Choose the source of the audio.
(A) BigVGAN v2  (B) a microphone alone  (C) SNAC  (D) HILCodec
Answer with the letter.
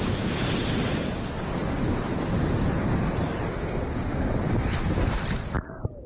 B